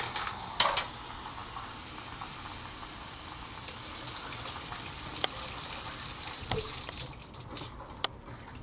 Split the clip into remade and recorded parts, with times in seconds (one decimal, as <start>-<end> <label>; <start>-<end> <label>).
0.0-8.6 recorded

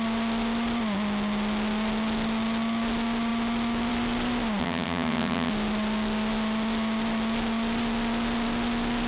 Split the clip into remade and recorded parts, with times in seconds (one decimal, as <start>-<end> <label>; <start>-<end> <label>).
0.0-4.6 recorded; 4.6-5.5 remade; 5.5-9.1 recorded

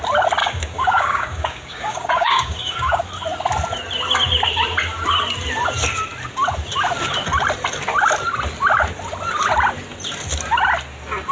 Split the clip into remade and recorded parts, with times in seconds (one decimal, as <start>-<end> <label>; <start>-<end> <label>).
0.0-0.4 recorded; 0.4-3.0 remade; 3.0-11.3 recorded

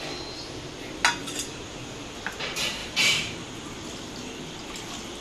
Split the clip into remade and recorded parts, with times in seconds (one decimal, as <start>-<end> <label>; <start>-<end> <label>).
0.0-1.2 recorded; 1.2-1.8 remade; 1.8-2.8 recorded; 2.8-3.5 remade; 3.5-5.2 recorded

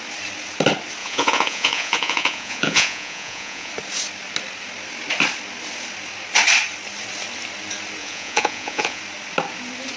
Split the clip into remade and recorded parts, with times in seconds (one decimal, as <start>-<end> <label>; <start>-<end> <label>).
0.0-1.0 recorded; 1.0-3.7 remade; 3.7-8.0 recorded; 8.0-9.0 remade; 9.0-10.0 recorded